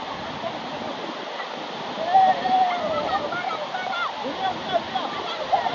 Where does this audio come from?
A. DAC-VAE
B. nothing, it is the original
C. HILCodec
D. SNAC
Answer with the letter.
B